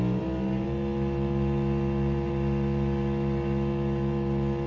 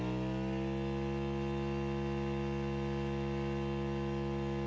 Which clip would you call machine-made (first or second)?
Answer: first